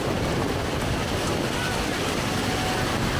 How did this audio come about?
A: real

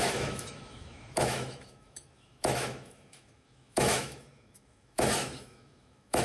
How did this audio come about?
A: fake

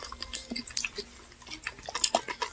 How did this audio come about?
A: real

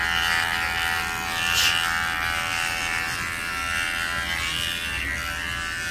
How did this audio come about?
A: real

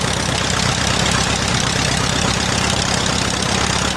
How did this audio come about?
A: real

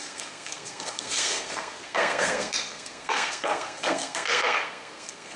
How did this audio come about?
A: fake